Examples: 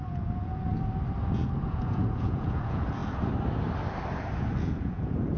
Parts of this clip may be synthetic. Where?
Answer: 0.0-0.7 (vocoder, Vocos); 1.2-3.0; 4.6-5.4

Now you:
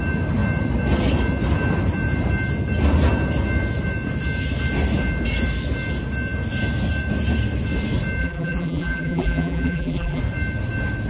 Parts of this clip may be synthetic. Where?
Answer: 8.2-10.2 (vocoder, BigVGAN v2)

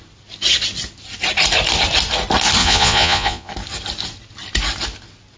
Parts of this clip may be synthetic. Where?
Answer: 2.6-3.5 (vocoder, Vocos)

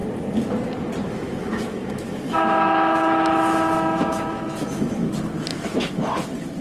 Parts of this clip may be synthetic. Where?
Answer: 1.1-5.1 (autoencoder, DAC-VAE); 5.5-6.1

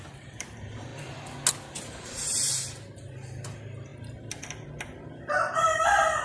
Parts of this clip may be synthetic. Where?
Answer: 0.0-0.9 (vocoder, BigVGAN v2); 1.5-3.9; 5.1-6.2

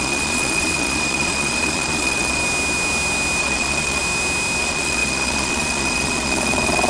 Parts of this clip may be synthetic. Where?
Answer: 0.0-2.4 (vocoder, Vocos); 3.4-4.0; 4.6-6.9

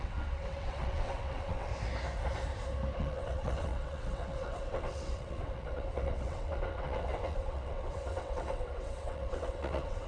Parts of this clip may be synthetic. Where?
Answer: 0.0-1.7 (vocoder, WaveNeXt); 3.0-10.1